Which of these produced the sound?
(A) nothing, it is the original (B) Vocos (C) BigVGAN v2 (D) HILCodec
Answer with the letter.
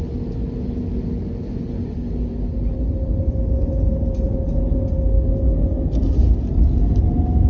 A